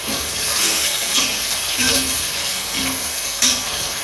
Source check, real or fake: fake